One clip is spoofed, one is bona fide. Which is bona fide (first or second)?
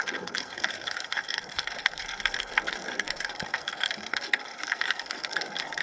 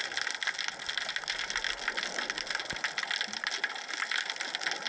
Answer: second